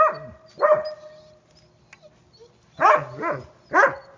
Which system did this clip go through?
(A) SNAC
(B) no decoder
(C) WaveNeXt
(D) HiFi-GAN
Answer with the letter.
B